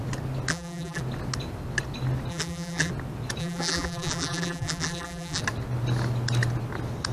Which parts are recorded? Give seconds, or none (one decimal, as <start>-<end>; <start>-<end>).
0.0-0.5; 1.0-2.3; 2.9-3.4; 5.4-7.1

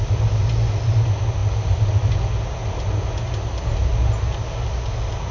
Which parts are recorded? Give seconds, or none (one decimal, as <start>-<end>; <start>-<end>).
0.0-5.3